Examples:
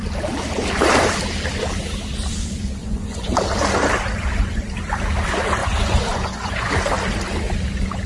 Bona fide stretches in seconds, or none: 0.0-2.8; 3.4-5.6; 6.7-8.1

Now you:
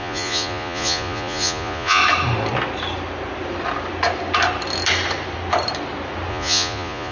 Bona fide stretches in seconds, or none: 2.0-6.3

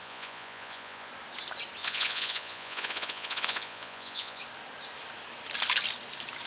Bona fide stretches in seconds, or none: 1.1-1.8; 4.4-6.5

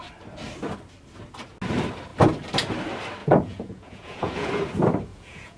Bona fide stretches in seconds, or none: 0.0-3.2; 4.5-5.1

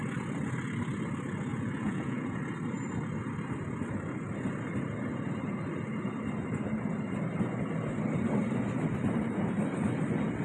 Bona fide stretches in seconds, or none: 0.0-1.5; 2.4-10.4

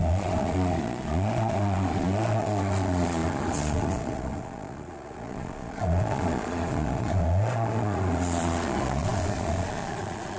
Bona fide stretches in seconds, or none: none

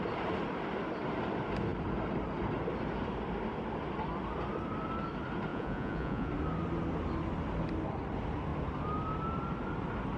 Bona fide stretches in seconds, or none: 0.0-5.5; 6.3-10.2